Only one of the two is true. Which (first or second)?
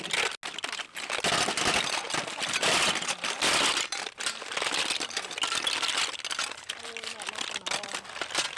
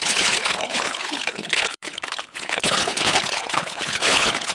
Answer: first